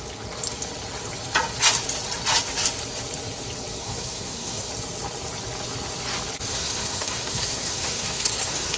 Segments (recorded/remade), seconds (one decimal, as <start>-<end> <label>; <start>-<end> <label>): 0.0-3.8 recorded; 3.8-4.7 remade; 4.7-6.5 recorded; 6.5-8.8 remade